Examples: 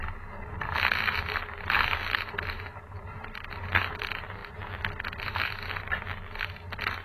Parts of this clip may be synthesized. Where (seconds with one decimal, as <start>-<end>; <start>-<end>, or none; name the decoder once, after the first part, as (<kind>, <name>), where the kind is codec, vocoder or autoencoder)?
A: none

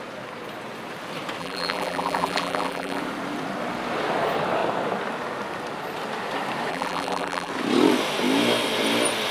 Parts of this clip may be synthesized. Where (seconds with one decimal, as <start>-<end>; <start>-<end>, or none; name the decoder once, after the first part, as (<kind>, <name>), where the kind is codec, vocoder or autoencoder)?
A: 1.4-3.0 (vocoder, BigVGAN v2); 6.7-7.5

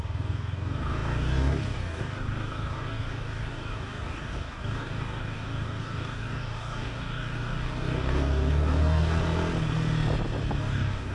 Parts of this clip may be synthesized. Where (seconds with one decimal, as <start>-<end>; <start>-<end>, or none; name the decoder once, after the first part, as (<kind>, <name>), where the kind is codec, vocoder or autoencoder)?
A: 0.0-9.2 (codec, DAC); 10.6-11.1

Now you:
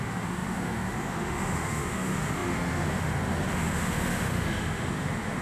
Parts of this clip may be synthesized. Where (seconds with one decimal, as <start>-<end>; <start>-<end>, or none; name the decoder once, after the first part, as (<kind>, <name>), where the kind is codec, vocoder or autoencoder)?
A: 0.0-5.4 (autoencoder, DAC-VAE)

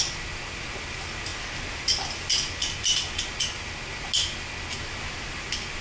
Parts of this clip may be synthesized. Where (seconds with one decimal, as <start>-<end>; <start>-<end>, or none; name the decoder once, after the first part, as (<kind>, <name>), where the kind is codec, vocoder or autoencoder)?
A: none

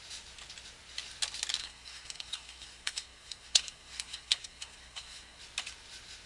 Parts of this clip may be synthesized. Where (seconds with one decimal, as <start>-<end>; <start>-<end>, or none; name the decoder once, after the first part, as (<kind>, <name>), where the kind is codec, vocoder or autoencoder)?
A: 1.6-5.4 (codec, SNAC)